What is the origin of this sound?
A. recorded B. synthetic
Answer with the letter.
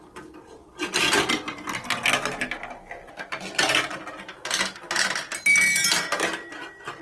A